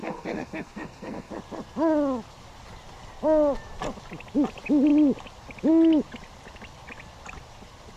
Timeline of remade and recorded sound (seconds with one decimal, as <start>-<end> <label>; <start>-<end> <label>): 0.0-1.3 remade; 1.3-8.0 recorded